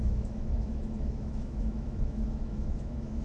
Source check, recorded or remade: remade